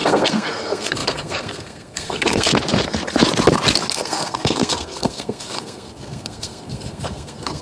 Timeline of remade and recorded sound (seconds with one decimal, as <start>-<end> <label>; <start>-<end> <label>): 0.0-2.5 remade; 2.5-3.9 recorded; 3.9-7.6 remade